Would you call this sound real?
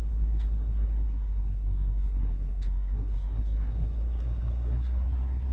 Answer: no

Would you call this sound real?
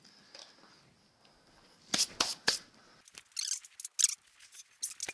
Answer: yes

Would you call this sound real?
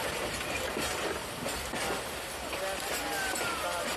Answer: yes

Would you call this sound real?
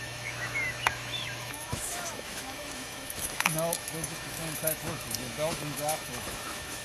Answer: no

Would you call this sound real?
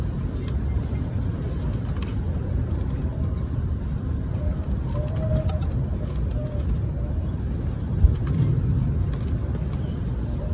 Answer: yes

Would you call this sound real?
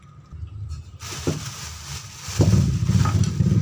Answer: yes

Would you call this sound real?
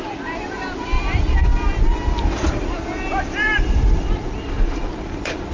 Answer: no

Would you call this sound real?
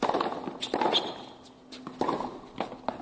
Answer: yes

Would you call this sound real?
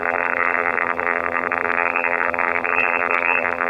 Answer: no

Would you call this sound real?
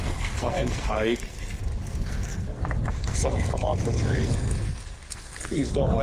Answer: no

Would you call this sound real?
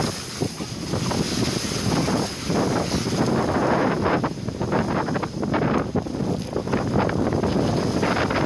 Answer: yes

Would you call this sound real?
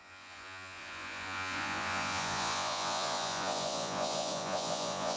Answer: no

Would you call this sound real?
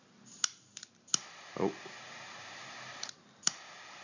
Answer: yes